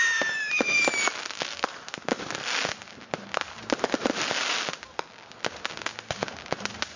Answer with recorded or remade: recorded